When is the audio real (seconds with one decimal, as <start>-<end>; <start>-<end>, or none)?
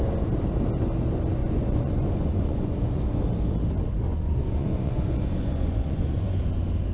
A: 0.0-1.4; 3.0-4.1; 6.4-6.9